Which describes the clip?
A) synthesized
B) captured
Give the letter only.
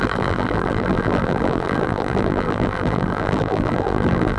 A